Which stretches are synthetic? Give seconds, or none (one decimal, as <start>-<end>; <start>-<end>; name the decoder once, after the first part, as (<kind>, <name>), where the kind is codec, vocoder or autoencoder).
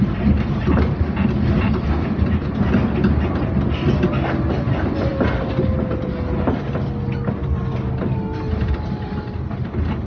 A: none